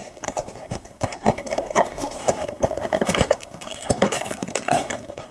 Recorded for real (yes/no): no